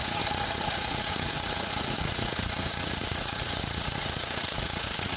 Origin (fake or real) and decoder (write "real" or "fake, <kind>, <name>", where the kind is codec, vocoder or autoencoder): fake, vocoder, Vocos